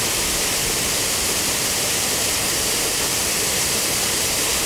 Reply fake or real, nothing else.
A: fake